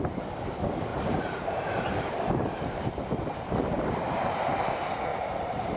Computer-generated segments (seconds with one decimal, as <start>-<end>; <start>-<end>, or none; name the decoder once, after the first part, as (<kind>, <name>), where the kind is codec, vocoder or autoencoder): 0.9-4.4 (vocoder, BigVGAN v2); 5.1-5.8